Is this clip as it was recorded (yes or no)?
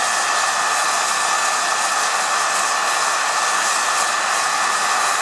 yes